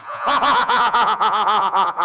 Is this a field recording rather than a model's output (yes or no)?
no